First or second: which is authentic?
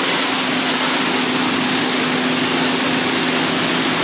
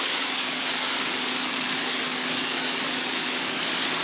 first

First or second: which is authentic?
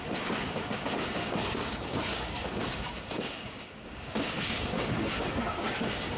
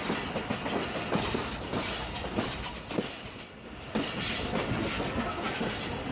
second